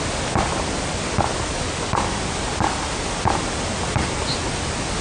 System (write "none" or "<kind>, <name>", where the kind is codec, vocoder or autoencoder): none